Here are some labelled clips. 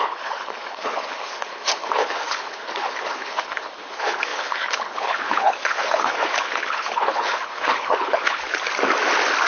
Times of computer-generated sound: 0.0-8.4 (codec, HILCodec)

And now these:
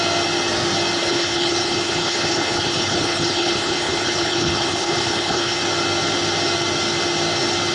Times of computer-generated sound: 1.0-5.6 (codec, HILCodec)

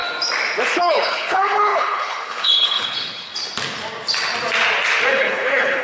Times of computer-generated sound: 0.7-3.3 (codec, HILCodec); 5.1-5.8